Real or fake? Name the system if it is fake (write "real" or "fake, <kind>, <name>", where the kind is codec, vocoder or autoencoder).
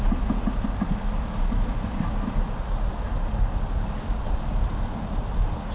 real